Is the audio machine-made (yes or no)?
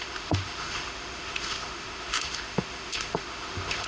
yes